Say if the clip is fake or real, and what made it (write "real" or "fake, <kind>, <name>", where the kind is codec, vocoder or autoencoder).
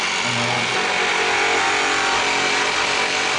real